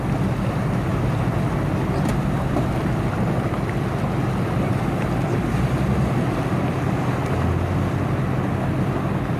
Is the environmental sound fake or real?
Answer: real